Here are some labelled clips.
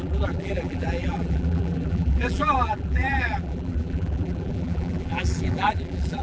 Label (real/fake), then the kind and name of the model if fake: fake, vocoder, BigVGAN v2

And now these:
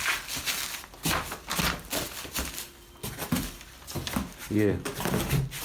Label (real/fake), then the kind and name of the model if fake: real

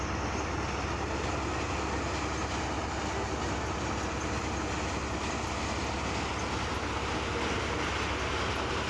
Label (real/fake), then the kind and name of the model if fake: real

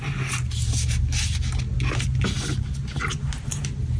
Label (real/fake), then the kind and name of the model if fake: real